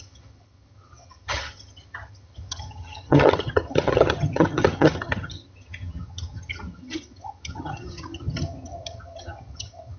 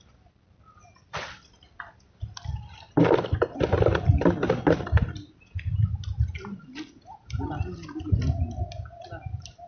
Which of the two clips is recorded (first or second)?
second